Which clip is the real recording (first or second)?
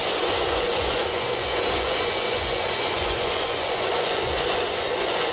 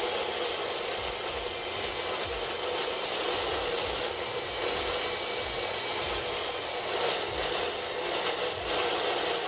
second